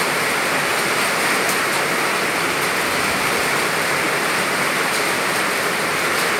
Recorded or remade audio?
recorded